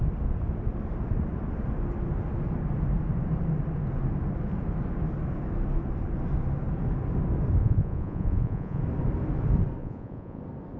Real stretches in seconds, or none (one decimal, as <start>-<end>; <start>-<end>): 0.0-7.6; 8.8-9.8; 10.4-10.8